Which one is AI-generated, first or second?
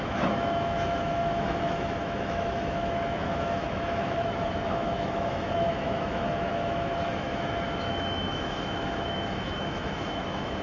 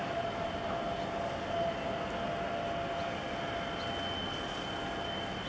first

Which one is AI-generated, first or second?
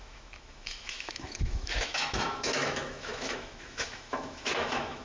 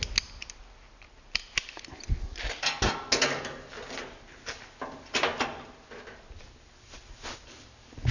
first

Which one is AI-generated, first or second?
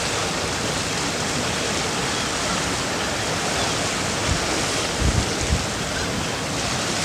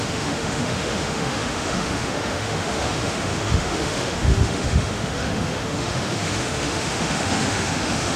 second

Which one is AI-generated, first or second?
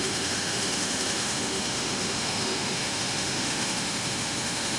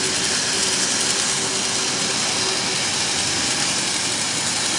first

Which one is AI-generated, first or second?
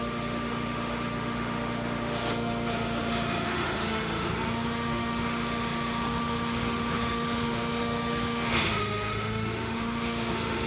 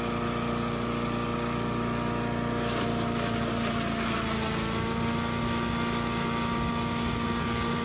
first